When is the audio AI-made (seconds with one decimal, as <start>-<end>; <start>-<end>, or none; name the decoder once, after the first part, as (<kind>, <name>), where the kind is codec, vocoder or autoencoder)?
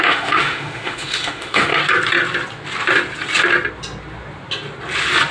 0.0-1.7 (autoencoder, DAC-VAE)